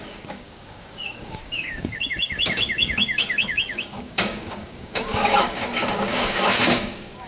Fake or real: fake